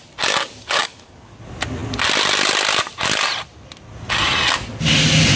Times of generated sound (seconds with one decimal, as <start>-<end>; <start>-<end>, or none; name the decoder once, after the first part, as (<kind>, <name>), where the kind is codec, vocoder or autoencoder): 0.4-1.4 (codec, DAC)